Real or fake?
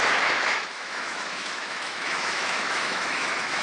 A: fake